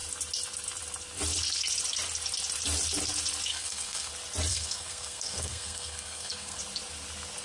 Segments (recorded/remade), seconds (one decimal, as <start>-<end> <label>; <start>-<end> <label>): 0.0-3.5 recorded; 3.5-4.1 remade; 4.1-4.5 recorded; 4.5-6.6 remade; 6.6-7.4 recorded